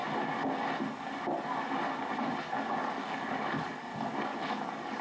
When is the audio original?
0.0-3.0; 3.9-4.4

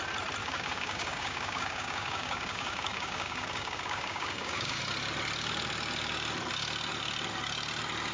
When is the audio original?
0.0-0.4; 4.8-8.1

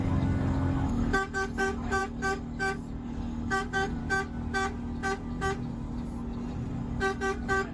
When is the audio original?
4.0-6.7

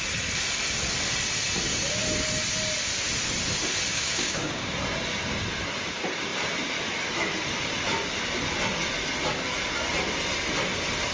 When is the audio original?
0.0-3.9; 4.7-11.1